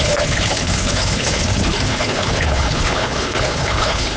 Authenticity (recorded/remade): remade